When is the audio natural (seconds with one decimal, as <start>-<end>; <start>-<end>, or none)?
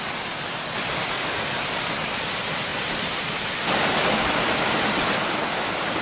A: 0.0-6.0